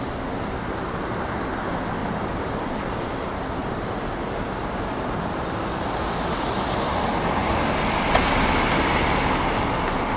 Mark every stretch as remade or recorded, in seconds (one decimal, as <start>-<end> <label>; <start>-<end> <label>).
0.0-2.0 recorded; 2.0-3.2 remade; 3.2-3.6 recorded; 3.6-5.2 remade; 5.2-10.2 recorded